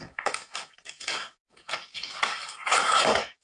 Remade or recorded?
remade